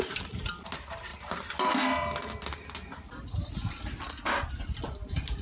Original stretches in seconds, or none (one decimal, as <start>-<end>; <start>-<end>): 1.1-3.7